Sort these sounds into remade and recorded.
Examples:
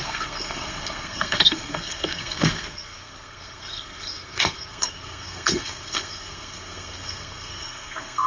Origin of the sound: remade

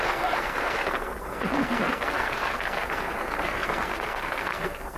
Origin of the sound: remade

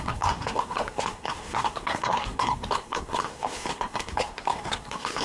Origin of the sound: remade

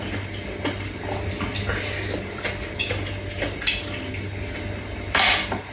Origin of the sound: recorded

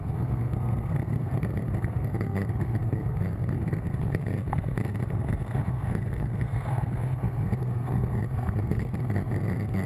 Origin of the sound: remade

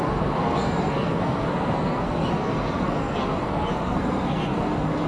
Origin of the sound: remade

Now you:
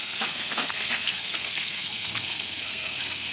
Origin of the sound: remade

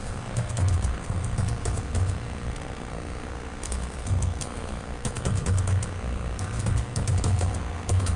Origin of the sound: remade